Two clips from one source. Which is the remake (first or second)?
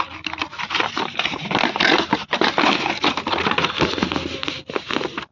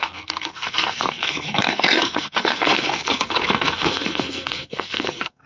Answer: second